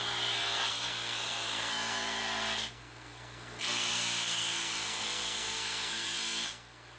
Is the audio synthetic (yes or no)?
yes